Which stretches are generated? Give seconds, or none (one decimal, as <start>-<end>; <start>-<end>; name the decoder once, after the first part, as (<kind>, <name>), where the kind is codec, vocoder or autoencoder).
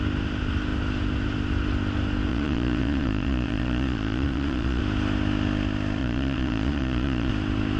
2.3-4.8 (vocoder, Vocos); 6.0-7.3